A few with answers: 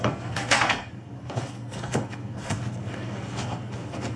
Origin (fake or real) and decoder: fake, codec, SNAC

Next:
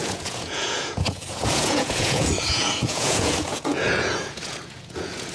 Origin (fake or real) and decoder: fake, vocoder, Vocos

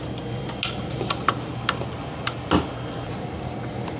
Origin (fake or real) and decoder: real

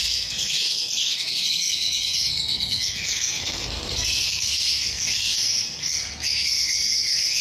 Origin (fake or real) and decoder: fake, codec, SNAC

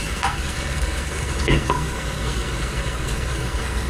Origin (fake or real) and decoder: fake, codec, SNAC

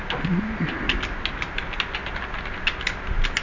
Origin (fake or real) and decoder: real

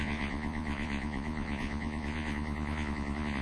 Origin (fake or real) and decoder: fake, vocoder, Vocos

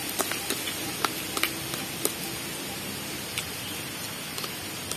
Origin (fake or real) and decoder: real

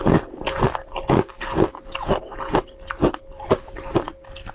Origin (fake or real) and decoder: real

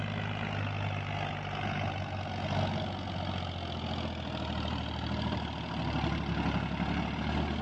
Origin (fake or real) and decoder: real